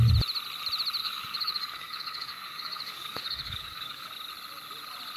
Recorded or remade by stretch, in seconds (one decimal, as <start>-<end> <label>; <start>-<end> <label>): 0.0-1.0 recorded; 1.0-4.1 remade; 4.1-5.2 recorded